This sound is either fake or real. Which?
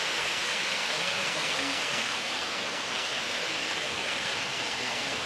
fake